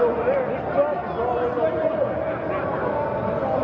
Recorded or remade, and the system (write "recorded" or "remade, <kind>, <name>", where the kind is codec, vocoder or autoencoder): recorded